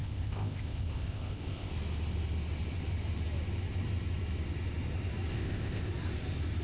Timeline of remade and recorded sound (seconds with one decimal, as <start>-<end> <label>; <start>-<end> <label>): 0.0-1.7 remade; 1.7-5.3 recorded; 5.3-5.9 remade; 5.9-6.6 recorded